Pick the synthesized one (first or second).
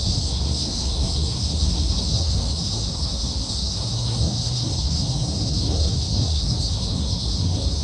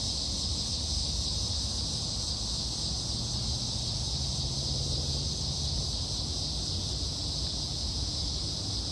first